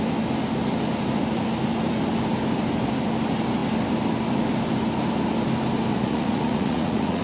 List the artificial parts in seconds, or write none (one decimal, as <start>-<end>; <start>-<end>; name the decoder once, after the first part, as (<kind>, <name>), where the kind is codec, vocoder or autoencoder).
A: 5.9-7.2 (vocoder, Vocos)